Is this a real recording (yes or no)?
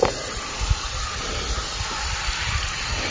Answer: yes